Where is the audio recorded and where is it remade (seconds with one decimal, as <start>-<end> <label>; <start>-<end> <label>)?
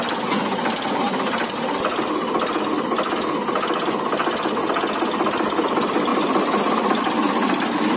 0.0-8.0 recorded